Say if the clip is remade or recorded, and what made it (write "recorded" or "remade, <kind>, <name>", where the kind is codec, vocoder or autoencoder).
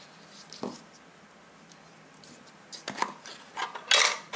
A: recorded